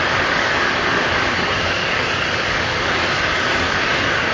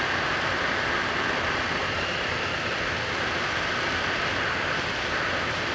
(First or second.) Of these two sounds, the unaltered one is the second